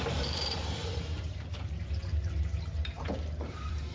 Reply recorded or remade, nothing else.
remade